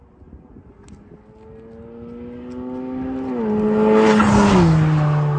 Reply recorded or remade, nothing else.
recorded